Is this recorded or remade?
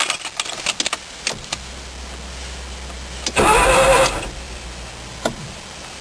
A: recorded